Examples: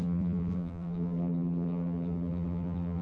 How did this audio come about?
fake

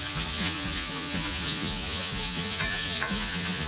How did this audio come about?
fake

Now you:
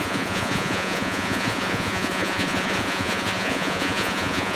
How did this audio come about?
fake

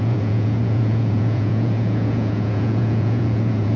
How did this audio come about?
fake